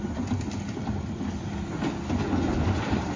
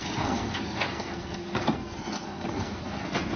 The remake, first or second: second